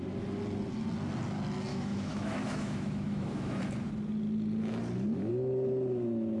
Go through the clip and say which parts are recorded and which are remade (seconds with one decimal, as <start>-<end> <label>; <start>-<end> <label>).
0.0-1.7 recorded; 1.7-3.6 remade; 3.6-6.4 recorded